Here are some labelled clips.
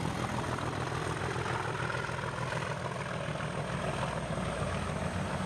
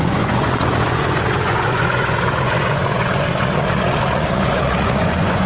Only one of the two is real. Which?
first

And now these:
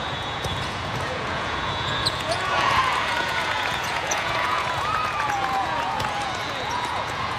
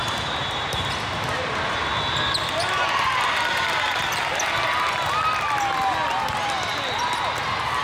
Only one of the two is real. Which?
second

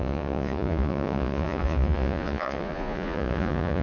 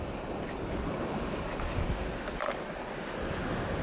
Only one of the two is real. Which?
second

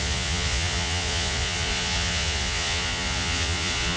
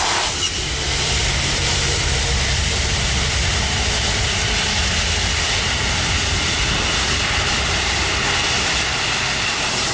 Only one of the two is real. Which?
second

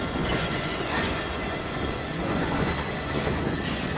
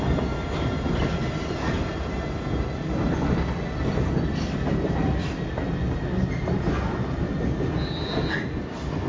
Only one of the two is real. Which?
second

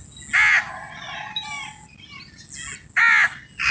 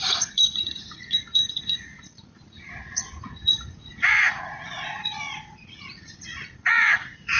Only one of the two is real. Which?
first